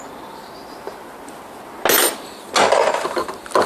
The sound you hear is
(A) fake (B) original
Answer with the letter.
B